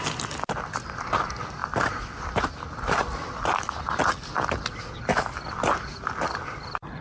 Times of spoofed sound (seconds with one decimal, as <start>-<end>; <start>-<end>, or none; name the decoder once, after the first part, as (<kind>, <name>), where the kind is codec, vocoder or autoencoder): none